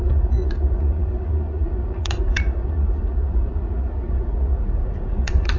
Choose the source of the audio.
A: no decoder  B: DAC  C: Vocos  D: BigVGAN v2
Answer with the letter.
C